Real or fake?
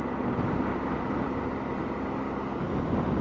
real